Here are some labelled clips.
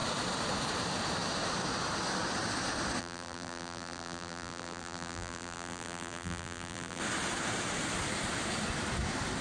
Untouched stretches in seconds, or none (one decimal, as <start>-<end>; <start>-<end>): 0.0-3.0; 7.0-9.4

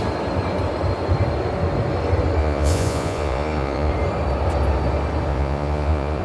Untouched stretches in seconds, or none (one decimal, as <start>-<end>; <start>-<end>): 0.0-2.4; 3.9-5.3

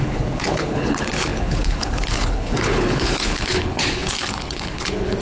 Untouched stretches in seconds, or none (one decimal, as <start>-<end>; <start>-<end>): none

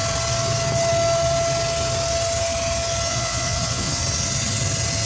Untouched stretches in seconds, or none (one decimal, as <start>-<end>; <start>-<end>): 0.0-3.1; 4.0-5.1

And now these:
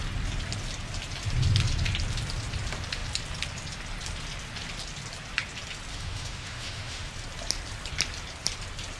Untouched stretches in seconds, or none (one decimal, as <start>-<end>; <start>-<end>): 0.0-5.9; 7.1-9.0

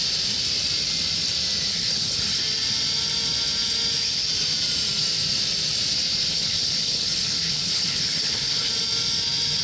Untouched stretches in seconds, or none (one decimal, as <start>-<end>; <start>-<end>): 0.0-1.7; 2.4-6.3; 8.7-9.6

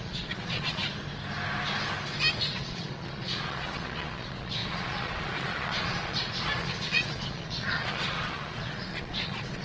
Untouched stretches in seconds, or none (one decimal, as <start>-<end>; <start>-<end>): 0.8-2.5

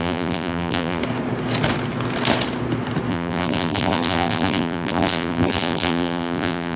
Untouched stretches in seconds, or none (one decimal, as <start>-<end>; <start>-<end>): 1.0-3.1